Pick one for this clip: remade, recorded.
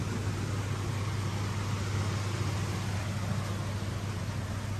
recorded